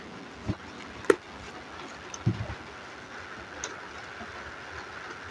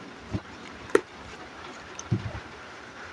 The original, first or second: first